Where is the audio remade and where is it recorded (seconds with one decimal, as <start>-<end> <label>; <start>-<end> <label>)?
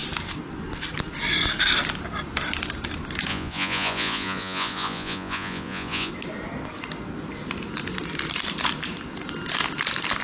0.0-3.3 recorded; 3.3-6.1 remade; 6.1-10.2 recorded